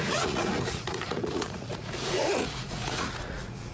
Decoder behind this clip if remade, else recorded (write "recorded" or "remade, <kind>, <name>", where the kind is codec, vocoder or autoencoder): remade, vocoder, Vocos